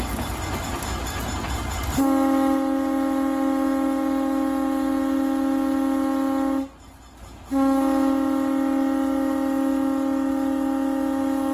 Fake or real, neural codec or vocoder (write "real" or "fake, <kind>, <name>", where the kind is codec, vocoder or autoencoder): real